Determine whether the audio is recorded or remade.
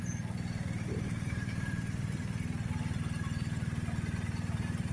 recorded